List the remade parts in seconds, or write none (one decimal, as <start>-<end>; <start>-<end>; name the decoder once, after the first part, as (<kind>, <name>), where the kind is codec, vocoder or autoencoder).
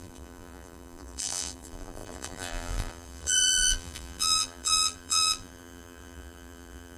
0.0-7.0 (vocoder, BigVGAN v2)